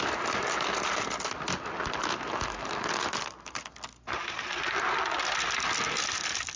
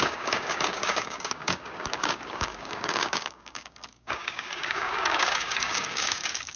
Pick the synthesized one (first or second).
second